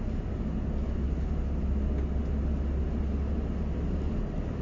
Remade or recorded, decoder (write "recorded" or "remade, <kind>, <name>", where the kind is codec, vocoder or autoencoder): recorded